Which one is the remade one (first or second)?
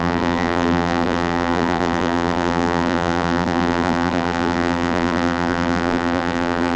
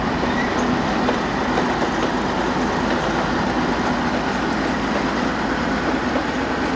first